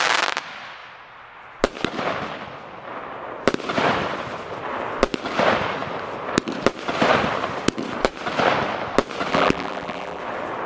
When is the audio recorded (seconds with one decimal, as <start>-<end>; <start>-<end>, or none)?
0.0-9.3; 10.2-10.7

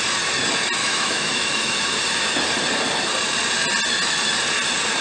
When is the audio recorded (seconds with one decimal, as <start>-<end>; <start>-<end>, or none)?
0.0-0.8; 2.0-5.0

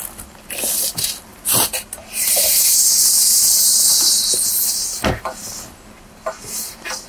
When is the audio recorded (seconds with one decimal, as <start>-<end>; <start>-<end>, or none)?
0.0-1.3; 4.3-7.1

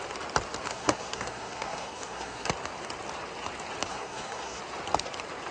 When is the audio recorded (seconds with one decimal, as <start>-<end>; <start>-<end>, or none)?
0.0-0.7; 2.5-3.9; 4.6-5.5